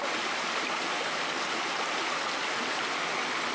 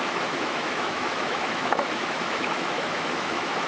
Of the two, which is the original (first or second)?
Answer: first